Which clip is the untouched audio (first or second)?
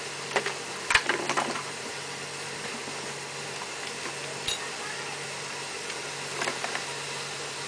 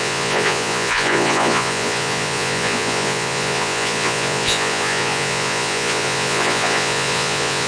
first